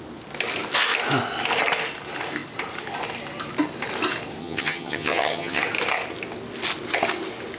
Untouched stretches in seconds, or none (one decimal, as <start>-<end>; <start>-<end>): 0.0-4.4; 5.6-7.6